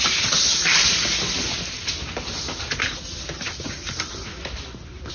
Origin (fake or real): real